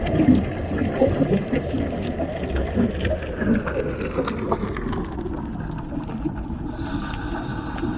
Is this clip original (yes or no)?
yes